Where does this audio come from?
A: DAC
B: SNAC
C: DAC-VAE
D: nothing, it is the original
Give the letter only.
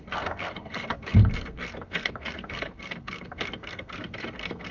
B